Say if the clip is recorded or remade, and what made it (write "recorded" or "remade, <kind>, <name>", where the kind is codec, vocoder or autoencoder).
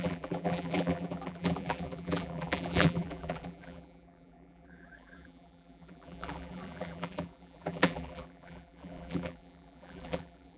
remade, vocoder, BigVGAN v2